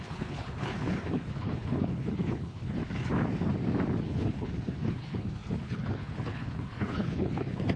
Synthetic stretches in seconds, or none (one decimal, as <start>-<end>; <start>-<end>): 0.0-2.8; 4.0-7.8